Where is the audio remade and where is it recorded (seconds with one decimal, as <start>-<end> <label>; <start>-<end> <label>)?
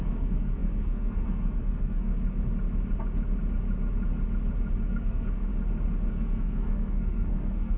0.0-2.1 remade; 2.1-4.9 recorded; 4.9-5.5 remade; 5.5-6.1 recorded; 6.1-7.8 remade